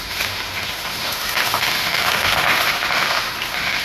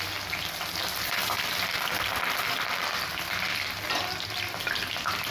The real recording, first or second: second